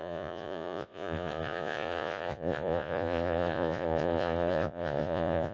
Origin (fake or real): fake